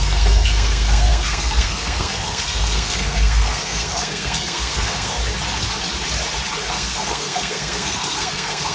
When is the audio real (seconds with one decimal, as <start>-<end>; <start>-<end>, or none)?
5.2-6.7